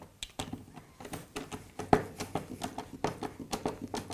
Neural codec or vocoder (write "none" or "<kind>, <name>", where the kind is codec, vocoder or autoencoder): none